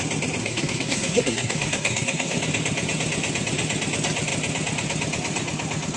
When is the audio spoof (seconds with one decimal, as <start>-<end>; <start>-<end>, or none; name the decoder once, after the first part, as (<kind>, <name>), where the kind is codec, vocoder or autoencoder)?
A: 0.4-2.4 (codec, SNAC)